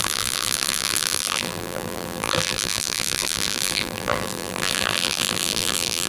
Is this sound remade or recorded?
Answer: remade